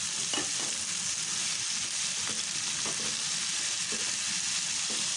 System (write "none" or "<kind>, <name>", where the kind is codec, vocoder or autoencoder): none